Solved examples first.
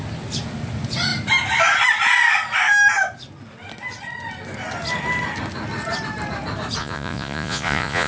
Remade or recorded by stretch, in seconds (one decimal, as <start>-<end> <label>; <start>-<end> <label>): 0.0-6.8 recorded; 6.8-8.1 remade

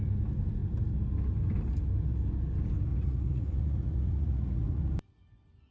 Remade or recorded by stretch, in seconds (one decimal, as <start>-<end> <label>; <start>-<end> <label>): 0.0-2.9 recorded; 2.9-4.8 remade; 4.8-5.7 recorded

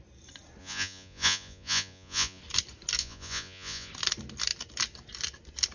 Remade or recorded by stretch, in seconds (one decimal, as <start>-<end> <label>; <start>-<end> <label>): 0.0-0.6 recorded; 0.6-2.4 remade; 2.4-3.0 recorded; 3.0-3.9 remade; 3.9-5.7 recorded

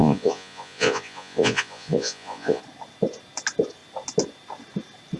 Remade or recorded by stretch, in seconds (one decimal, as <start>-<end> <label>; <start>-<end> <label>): 0.0-2.6 remade; 2.6-5.2 recorded

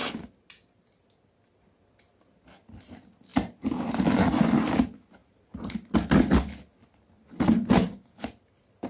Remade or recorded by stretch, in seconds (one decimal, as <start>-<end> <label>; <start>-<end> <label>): 0.0-8.9 recorded